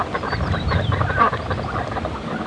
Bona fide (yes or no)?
yes